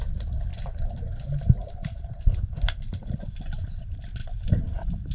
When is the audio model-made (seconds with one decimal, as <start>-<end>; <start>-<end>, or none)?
0.5-1.0; 1.6-3.4; 4.2-5.1